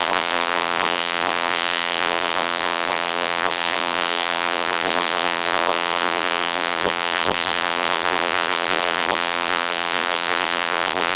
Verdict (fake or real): fake